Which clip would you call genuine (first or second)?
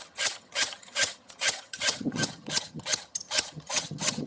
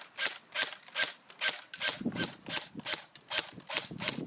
second